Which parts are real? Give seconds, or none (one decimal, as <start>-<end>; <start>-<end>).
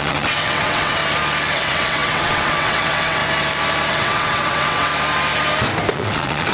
1.0-1.5; 3.2-3.9; 4.9-5.9